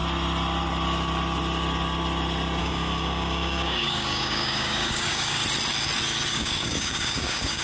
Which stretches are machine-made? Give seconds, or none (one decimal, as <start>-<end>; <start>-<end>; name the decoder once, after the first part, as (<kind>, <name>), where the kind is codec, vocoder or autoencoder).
2.6-5.4 (codec, DAC); 6.3-7.6